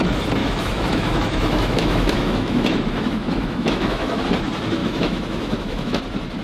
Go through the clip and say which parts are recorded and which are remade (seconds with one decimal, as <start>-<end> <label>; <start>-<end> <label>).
0.0-0.4 recorded; 0.4-4.2 remade; 4.2-4.8 recorded; 4.8-6.0 remade; 6.0-6.4 recorded